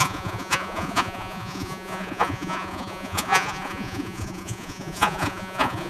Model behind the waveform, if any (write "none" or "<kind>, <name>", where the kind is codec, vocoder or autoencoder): vocoder, Vocos